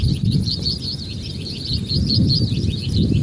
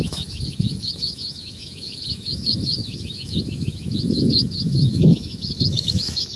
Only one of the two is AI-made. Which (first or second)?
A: second